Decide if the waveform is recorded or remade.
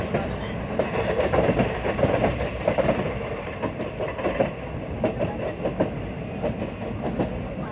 recorded